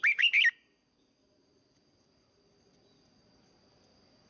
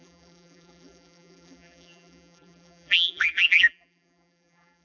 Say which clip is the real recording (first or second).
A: first